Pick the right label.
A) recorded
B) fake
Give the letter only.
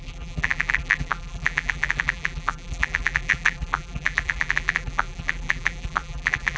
B